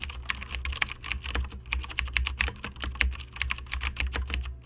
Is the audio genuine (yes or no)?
yes